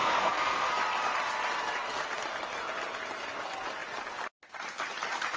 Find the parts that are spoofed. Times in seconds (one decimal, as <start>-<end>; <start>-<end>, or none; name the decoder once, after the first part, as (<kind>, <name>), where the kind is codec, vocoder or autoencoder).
0.0-0.7 (codec, SNAC)